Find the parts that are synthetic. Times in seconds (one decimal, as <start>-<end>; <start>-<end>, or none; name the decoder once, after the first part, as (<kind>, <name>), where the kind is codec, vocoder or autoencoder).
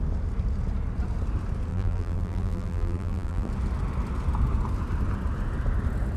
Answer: 1.7-3.5 (vocoder, BigVGAN v2)